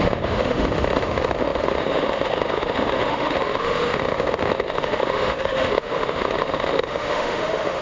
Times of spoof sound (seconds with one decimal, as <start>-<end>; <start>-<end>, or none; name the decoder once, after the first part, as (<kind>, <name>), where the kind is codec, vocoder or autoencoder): 0.0-7.8 (autoencoder, DAC-VAE)